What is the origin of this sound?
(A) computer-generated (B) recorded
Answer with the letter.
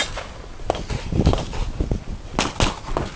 B